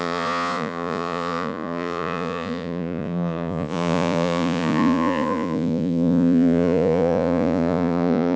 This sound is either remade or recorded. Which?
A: remade